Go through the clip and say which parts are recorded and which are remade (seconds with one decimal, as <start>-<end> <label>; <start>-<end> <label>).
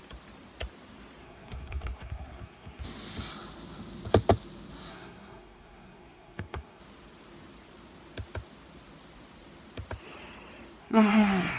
0.0-1.2 recorded; 1.2-2.8 remade; 2.8-4.9 recorded; 4.9-6.8 remade; 6.8-10.8 recorded; 10.8-11.6 remade